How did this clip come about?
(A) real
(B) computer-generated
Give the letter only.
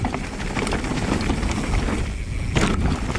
A